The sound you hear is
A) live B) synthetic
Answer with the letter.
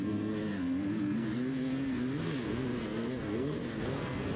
B